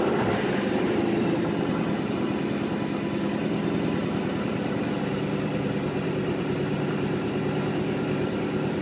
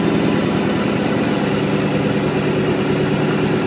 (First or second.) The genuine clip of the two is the second